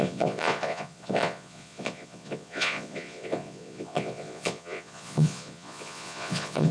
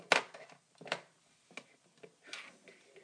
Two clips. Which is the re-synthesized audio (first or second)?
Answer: first